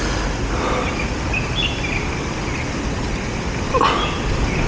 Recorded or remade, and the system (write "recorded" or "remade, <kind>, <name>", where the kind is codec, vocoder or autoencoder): recorded